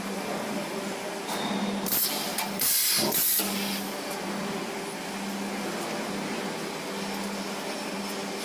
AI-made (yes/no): no